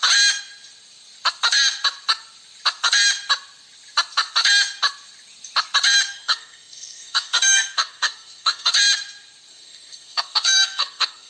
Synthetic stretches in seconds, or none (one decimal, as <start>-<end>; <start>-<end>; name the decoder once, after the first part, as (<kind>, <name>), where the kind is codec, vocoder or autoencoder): 6.1-8.7 (codec, SNAC); 9.5-11.3